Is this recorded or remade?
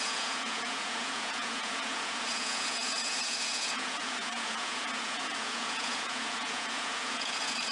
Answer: remade